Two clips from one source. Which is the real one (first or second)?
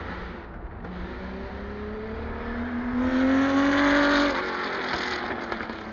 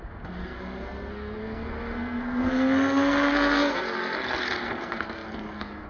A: first